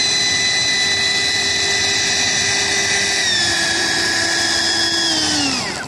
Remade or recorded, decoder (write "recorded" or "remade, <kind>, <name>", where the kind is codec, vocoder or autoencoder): recorded